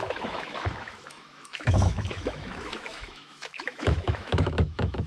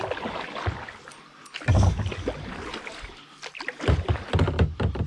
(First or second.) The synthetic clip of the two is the first